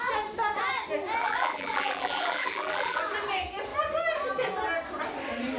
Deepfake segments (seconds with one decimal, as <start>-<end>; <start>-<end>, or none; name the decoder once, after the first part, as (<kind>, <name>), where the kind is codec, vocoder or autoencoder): 1.2-3.0 (vocoder, BigVGAN v2)